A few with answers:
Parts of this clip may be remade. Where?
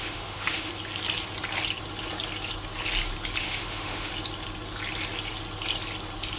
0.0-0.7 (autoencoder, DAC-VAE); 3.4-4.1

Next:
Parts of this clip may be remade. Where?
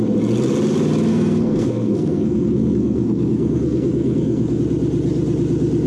1.1-4.6 (codec, SNAC)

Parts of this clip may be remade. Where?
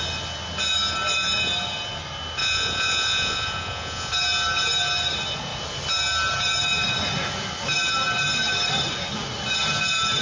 2.4-4.1 (vocoder, Vocos)